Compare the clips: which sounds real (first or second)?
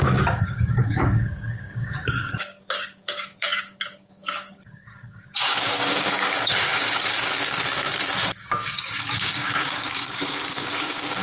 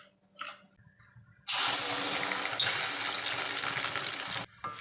second